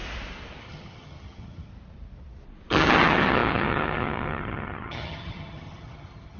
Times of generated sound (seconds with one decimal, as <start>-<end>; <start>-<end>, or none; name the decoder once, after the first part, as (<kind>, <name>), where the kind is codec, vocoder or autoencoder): 0.6-1.7 (vocoder, HiFi-GAN); 2.7-6.4